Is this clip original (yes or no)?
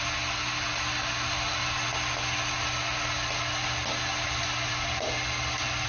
yes